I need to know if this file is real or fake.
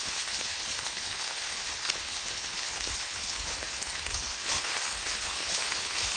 fake